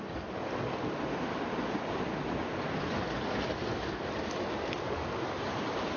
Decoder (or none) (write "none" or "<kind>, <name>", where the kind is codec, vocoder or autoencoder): none